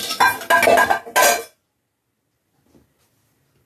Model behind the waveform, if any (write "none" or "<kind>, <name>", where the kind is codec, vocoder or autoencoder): none